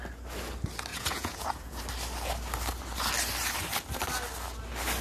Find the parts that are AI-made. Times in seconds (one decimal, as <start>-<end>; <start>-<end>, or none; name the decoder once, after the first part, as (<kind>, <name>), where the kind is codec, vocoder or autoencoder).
0.9-1.8 (vocoder, Vocos)